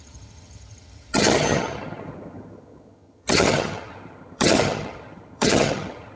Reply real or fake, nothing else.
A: fake